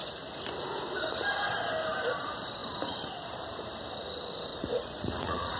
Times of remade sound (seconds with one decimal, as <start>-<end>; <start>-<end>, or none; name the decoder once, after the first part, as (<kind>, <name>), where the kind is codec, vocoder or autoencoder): 4.5-5.6 (vocoder, Vocos)